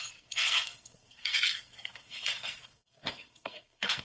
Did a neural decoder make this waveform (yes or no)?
yes